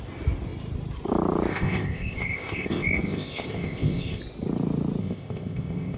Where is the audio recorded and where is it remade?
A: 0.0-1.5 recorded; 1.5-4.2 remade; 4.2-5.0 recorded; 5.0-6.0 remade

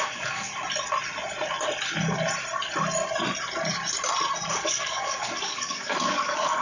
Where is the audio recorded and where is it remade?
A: 0.0-0.5 remade; 0.5-4.5 recorded; 4.5-6.6 remade

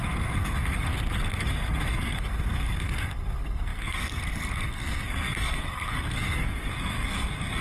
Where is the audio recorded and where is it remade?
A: 0.0-7.6 remade

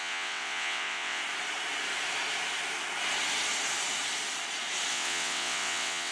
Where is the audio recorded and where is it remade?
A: 0.0-1.2 remade; 1.2-4.9 recorded; 4.9-6.1 remade

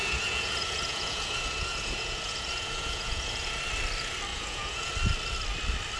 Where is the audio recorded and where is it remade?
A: 0.0-3.6 remade; 3.6-4.3 recorded; 4.3-4.9 remade; 4.9-6.0 recorded

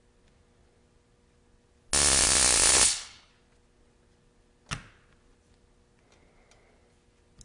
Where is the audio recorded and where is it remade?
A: 0.0-2.7 recorded; 2.7-3.3 remade; 3.3-7.4 recorded

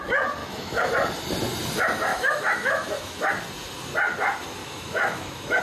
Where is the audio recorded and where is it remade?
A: 0.0-0.4 recorded; 0.4-0.9 remade; 0.9-2.1 recorded; 2.1-3.3 remade; 3.3-4.6 recorded; 4.6-5.6 remade